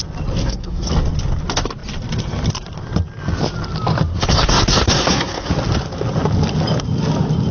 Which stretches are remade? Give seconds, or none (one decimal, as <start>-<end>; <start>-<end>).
0.4-0.9; 4.1-5.5